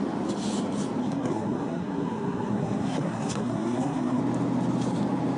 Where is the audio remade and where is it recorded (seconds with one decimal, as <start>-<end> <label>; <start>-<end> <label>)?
0.0-1.0 recorded; 1.0-4.2 remade; 4.2-5.4 recorded